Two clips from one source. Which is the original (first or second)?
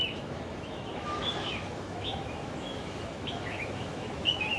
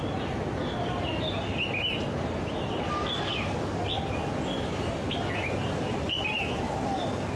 second